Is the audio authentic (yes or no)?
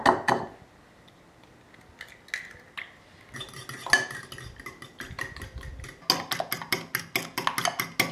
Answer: yes